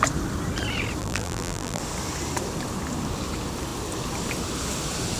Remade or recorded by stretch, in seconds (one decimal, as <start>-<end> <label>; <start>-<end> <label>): 0.0-1.0 recorded; 1.0-1.8 remade; 1.8-5.2 recorded